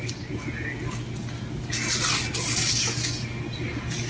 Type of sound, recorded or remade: recorded